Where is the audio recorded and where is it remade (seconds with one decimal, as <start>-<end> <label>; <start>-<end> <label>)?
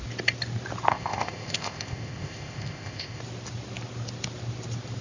0.0-0.9 recorded; 0.9-3.2 remade; 3.2-5.0 recorded